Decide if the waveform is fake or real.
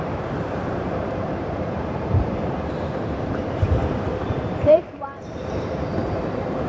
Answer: fake